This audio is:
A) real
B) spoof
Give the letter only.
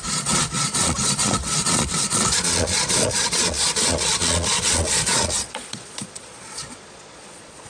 B